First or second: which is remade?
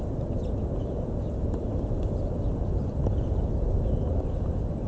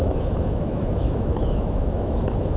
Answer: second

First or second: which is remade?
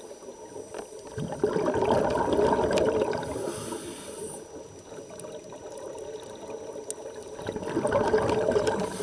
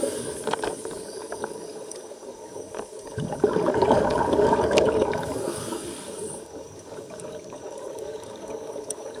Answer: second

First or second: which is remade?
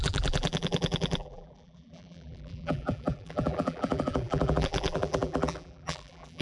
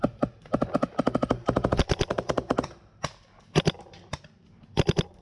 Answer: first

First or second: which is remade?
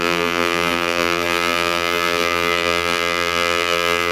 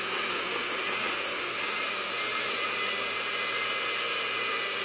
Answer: first